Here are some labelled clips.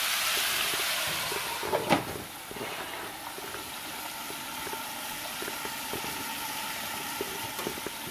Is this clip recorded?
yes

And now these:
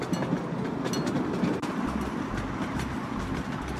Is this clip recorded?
yes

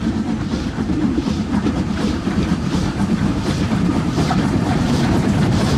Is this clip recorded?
no